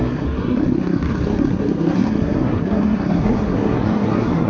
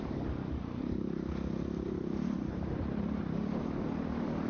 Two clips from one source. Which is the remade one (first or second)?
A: first